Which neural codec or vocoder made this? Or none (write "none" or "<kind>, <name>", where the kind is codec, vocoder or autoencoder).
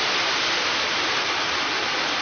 none